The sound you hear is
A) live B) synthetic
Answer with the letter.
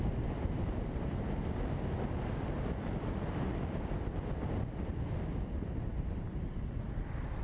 A